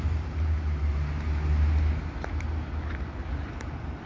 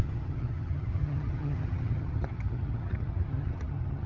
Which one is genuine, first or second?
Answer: first